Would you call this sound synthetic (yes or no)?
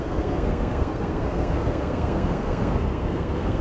yes